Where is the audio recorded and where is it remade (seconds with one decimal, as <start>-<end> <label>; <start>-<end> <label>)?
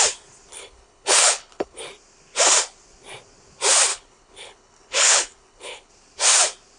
0.0-0.5 recorded; 0.5-1.8 remade; 1.8-3.9 recorded; 3.9-5.9 remade; 5.9-6.8 recorded